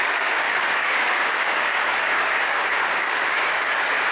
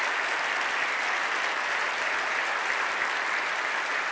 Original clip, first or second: second